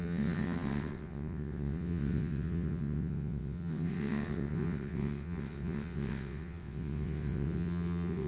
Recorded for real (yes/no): no